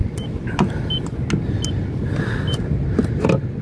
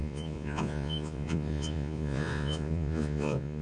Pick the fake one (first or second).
second